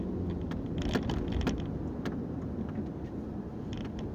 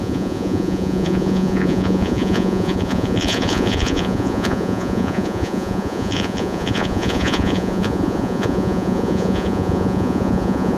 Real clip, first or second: first